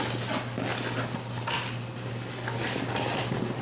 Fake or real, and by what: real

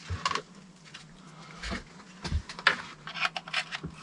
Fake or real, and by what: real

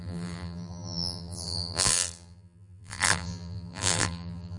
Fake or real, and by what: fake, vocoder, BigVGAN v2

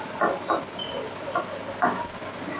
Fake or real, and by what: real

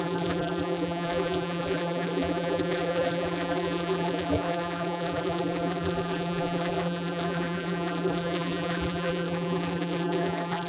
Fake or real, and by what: fake, vocoder, BigVGAN v2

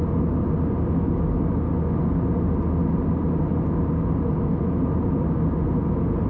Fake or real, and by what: real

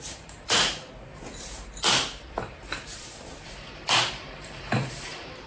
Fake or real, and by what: fake, vocoder, BigVGAN v2